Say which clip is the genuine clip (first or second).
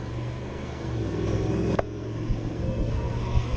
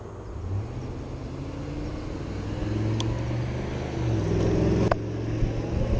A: second